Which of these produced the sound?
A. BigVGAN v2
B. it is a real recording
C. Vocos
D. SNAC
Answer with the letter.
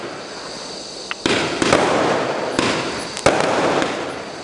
B